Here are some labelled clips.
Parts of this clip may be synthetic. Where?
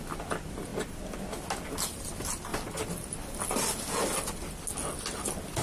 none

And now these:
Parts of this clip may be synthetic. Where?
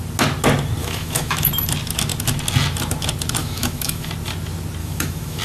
0.8-1.5 (autoencoder, DAC-VAE); 3.4-4.1; 4.8-5.4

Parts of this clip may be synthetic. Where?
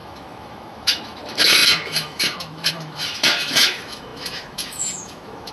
0.0-5.5 (autoencoder, DAC-VAE)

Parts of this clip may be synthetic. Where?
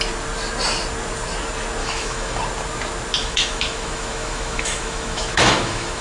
1.8-2.4 (autoencoder, DAC-VAE); 3.2-6.0